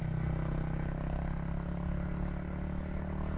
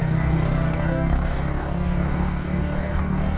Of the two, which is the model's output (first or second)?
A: second